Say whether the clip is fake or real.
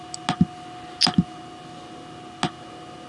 real